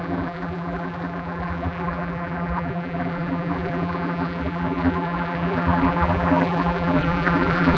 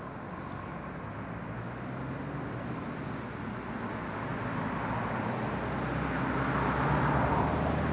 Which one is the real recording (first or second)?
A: second